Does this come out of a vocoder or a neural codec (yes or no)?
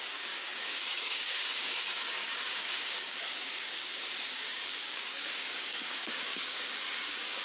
yes